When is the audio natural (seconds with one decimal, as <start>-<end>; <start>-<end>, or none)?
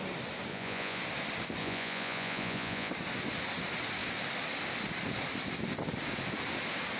0.0-0.5; 1.0-1.6; 2.9-7.0